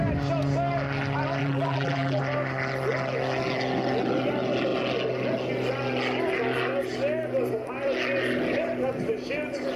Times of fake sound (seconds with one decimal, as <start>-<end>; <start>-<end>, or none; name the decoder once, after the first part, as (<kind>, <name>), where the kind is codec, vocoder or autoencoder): 1.4-2.2 (vocoder, BigVGAN v2)